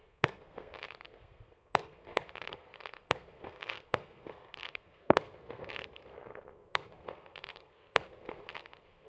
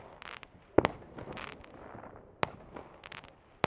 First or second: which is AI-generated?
first